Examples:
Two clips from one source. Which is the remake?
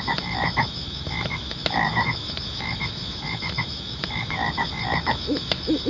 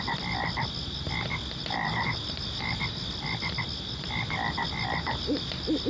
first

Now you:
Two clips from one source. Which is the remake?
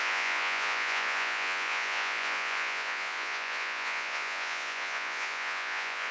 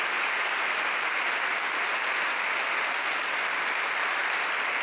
first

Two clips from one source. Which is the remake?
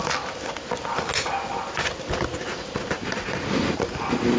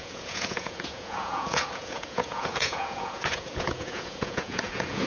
second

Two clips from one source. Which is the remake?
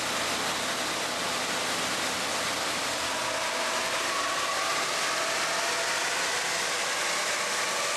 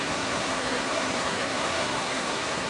second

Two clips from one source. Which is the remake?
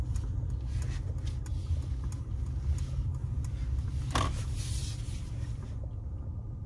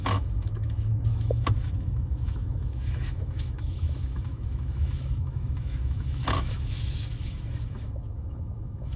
second